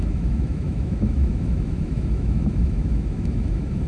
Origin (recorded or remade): remade